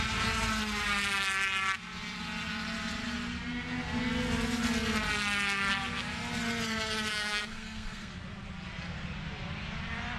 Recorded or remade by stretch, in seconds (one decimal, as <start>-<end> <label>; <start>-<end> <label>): 0.0-7.1 recorded; 7.1-8.1 remade; 8.1-10.2 recorded

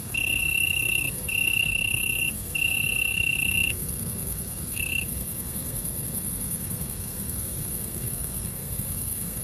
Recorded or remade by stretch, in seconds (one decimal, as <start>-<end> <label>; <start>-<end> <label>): 0.0-9.4 remade

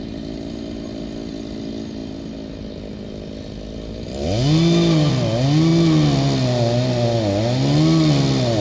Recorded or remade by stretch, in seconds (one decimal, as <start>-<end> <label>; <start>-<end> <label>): 0.0-8.6 recorded

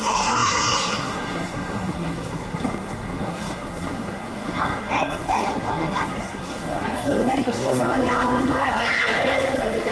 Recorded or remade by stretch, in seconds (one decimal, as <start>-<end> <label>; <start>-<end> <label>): 0.0-9.9 remade

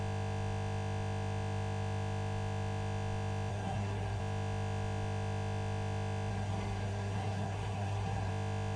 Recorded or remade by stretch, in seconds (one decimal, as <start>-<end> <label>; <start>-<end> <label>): 0.0-3.5 recorded; 3.5-4.2 remade; 4.2-6.3 recorded; 6.3-8.3 remade; 8.3-8.8 recorded